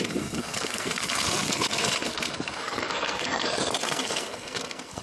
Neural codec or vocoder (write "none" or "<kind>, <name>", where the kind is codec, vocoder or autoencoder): codec, SNAC